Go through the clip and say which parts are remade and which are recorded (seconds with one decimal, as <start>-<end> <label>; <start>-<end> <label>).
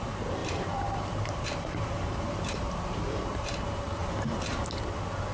0.0-0.4 recorded; 0.4-3.6 remade; 3.6-5.3 recorded